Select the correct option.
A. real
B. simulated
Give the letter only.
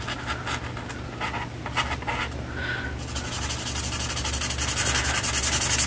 A